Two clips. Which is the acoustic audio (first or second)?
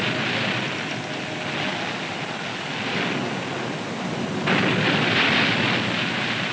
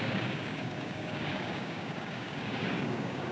first